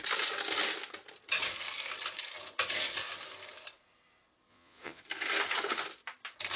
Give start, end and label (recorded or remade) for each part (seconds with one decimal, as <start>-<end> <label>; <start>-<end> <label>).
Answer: 0.0-4.5 recorded; 4.5-5.0 remade; 5.0-6.6 recorded